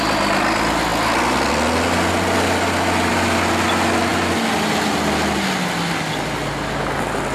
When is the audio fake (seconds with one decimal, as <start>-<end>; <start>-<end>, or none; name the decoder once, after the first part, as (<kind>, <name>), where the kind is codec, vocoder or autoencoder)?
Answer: none